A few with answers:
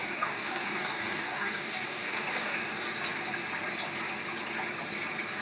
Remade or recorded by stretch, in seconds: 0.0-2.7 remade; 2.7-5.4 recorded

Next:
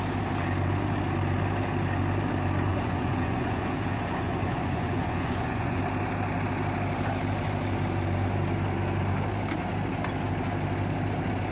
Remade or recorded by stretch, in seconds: 0.0-2.7 recorded; 2.7-5.8 remade; 5.8-11.5 recorded

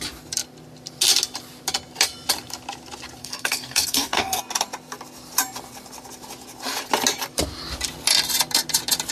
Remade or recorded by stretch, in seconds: 0.0-3.2 recorded; 3.2-4.4 remade; 4.4-9.1 recorded

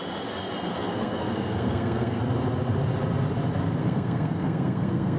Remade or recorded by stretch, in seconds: 0.0-0.7 recorded; 0.7-2.2 remade; 2.2-3.8 recorded; 3.8-5.2 remade

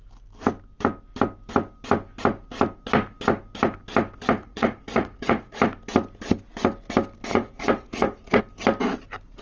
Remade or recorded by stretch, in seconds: 0.0-4.4 recorded; 4.4-5.6 remade; 5.6-7.3 recorded; 7.3-8.4 remade; 8.4-9.4 recorded